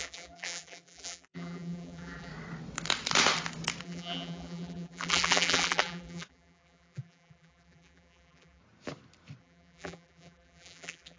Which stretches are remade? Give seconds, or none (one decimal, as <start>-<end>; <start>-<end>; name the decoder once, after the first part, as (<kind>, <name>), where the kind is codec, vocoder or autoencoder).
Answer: 0.0-2.3 (vocoder, BigVGAN v2); 3.8-8.6; 9.4-11.2

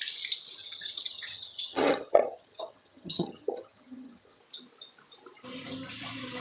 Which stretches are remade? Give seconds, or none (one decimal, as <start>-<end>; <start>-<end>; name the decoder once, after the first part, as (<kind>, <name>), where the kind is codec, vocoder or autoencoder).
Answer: 0.6-4.4 (vocoder, HiFi-GAN)

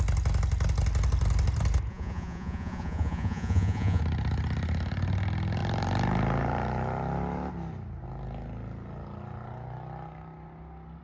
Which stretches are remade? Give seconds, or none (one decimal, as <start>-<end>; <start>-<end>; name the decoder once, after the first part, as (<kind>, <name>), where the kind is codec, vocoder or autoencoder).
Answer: 1.9-4.0 (vocoder, Vocos)

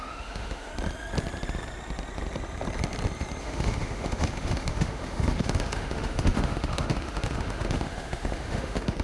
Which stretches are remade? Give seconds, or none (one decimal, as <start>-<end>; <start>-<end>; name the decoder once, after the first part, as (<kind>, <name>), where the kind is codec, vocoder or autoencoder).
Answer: 0.0-0.7 (autoencoder, DAC-VAE); 3.4-9.0

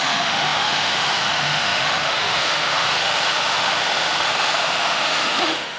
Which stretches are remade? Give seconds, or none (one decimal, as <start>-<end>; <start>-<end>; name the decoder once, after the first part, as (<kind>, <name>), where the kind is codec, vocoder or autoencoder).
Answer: 0.0-5.8 (autoencoder, DAC-VAE)